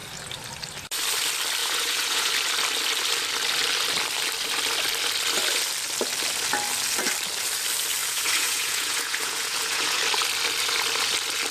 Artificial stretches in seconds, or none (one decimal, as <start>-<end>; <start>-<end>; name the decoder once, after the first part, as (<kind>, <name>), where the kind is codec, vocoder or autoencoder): 1.6-2.3 (vocoder, Vocos); 8.0-10.0